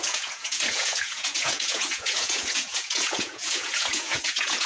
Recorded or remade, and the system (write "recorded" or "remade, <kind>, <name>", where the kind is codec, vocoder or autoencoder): remade, vocoder, Vocos